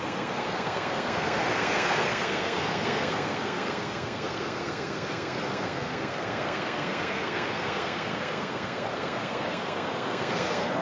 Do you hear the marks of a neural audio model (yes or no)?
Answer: yes